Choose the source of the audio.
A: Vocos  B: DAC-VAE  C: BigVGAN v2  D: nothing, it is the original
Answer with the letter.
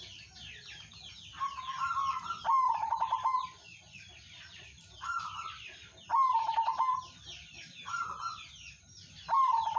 D